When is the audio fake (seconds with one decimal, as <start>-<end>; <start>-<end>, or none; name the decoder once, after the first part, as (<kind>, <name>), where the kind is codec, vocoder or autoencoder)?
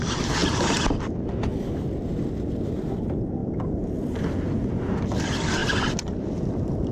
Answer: 1.5-2.2 (vocoder, BigVGAN v2); 5.6-6.4